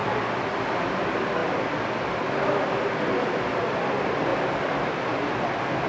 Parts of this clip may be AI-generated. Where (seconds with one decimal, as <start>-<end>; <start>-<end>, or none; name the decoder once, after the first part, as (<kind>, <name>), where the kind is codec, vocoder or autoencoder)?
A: 1.4-2.3 (vocoder, BigVGAN v2)